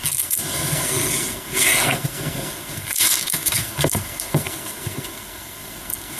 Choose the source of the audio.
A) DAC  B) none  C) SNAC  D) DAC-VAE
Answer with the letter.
C